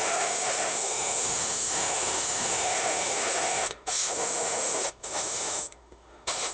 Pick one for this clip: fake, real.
fake